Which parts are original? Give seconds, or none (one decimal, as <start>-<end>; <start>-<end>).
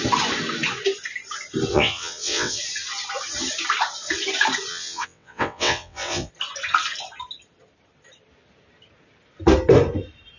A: 0.0-1.7; 2.6-4.7; 6.3-10.4